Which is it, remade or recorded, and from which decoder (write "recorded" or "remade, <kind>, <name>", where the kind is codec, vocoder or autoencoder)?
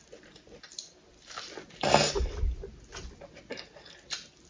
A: recorded